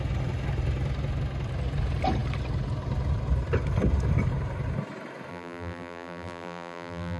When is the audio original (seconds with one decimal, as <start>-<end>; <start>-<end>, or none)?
0.0-5.3